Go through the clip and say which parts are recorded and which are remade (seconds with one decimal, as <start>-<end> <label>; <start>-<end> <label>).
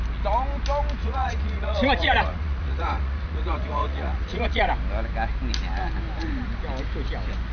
0.0-1.0 recorded; 1.0-4.7 remade; 4.7-7.5 recorded